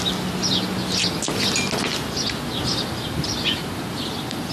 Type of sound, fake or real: real